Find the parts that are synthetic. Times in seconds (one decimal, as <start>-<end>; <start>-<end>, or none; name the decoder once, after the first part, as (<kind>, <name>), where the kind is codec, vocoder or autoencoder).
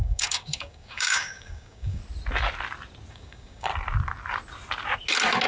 0.0-2.0 (codec, DAC); 3.1-3.7